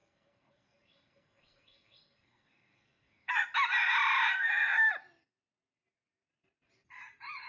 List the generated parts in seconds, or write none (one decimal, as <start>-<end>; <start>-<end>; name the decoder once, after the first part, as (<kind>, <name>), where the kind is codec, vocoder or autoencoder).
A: 0.0-3.3 (codec, SNAC); 4.3-4.9